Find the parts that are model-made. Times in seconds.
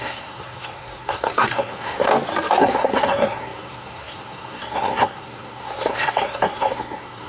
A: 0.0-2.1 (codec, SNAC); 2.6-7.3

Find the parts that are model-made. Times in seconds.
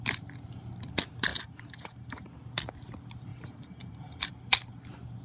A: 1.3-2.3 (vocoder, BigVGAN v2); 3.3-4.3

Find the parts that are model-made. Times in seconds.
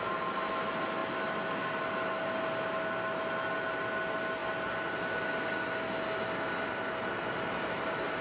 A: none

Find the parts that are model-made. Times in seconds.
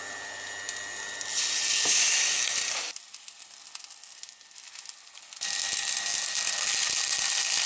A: none